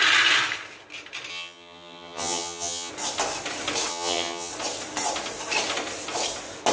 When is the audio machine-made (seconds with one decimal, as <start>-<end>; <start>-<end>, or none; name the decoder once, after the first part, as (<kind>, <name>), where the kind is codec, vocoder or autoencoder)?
1.3-2.9 (vocoder, HiFi-GAN); 3.9-4.5

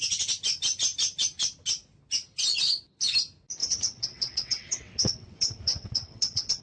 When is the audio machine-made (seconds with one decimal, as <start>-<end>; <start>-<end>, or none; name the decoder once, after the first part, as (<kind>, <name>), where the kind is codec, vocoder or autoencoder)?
3.6-6.6 (vocoder, WaveNeXt)